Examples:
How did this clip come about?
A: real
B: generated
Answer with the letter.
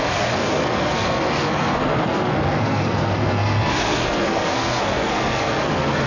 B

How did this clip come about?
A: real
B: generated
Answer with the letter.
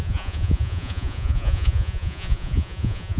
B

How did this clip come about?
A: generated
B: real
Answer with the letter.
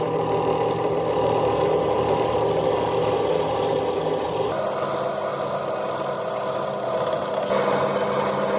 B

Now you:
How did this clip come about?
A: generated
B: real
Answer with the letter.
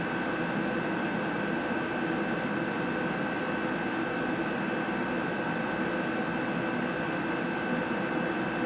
B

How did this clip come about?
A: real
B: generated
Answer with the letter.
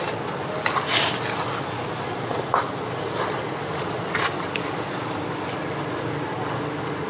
A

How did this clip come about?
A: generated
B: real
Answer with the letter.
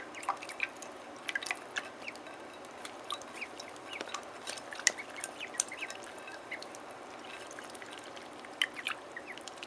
A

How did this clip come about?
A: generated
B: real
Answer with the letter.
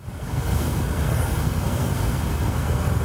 A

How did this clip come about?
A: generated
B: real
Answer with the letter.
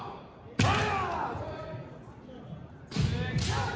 B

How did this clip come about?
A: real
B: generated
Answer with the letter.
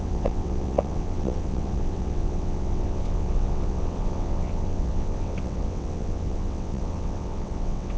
B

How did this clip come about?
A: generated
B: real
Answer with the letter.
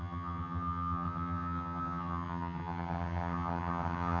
A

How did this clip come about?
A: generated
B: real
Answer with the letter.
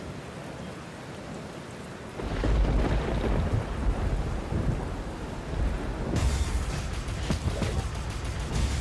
B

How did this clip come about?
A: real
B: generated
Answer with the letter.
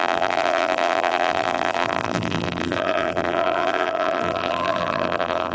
B